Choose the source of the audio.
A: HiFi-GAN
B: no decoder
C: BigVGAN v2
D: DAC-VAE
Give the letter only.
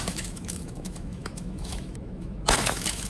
D